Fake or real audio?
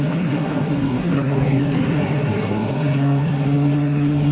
fake